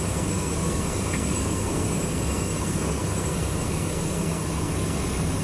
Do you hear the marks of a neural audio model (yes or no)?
yes